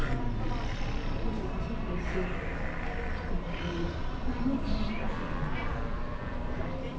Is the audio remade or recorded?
recorded